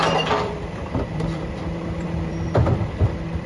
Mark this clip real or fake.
fake